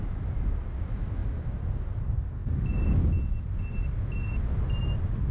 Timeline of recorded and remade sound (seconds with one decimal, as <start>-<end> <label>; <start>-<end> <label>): 0.0-5.3 recorded